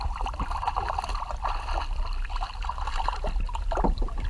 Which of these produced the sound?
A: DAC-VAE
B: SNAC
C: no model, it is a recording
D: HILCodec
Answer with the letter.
C